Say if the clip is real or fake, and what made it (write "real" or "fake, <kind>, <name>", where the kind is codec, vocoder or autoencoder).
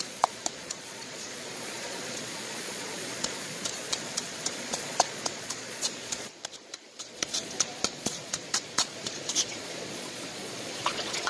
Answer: fake, vocoder, Vocos